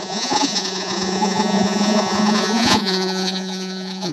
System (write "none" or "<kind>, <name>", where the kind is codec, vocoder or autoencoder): vocoder, Vocos